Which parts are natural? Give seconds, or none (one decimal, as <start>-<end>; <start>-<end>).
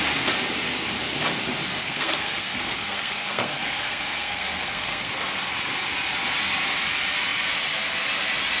0.0-1.8; 5.1-8.6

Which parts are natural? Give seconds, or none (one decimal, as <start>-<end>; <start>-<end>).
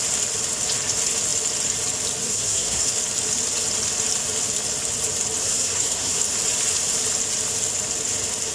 0.0-2.2; 2.9-5.4; 6.2-8.5